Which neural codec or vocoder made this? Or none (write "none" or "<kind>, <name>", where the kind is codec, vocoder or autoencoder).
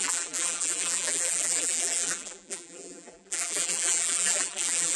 vocoder, BigVGAN v2